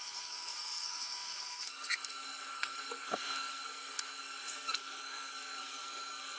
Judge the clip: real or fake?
fake